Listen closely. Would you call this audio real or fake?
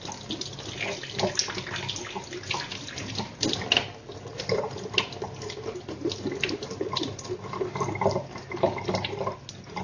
real